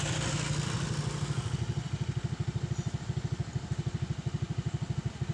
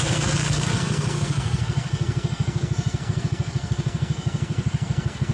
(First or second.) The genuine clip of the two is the first